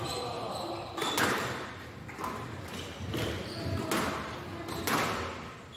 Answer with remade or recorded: recorded